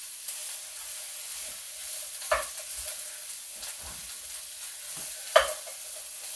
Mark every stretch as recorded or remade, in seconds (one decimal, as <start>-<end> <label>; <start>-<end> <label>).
0.0-6.4 recorded